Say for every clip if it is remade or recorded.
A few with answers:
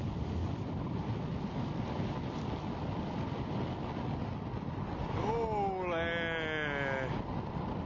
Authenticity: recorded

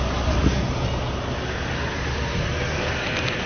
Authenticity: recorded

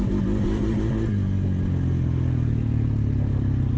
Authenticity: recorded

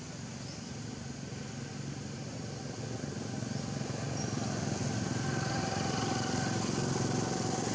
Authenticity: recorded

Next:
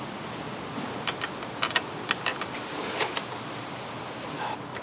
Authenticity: recorded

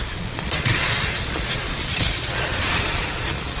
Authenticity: remade